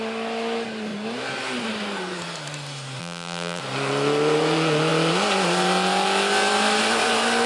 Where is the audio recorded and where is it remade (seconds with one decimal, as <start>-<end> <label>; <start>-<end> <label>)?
0.0-3.0 recorded; 3.0-3.6 remade; 3.6-7.5 recorded